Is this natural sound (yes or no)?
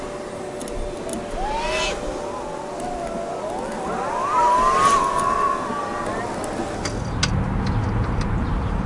yes